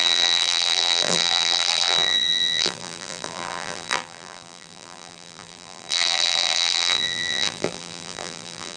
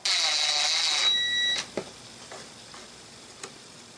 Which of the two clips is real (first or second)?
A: second